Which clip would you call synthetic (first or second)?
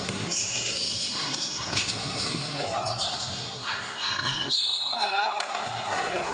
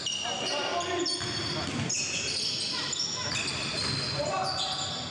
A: first